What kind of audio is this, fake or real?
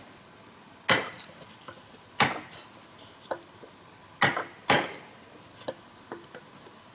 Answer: real